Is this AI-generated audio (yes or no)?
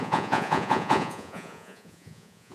yes